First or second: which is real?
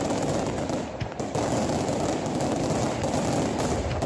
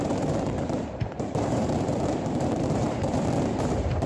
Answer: first